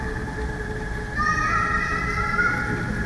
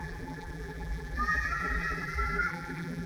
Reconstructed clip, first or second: second